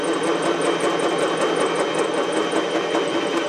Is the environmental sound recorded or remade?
recorded